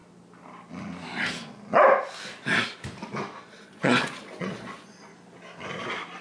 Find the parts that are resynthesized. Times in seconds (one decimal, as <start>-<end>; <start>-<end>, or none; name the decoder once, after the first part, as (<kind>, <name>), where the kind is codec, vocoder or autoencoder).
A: 3.5-5.1 (vocoder, Vocos)